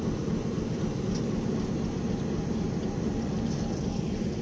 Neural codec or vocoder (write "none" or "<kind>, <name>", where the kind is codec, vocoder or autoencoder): none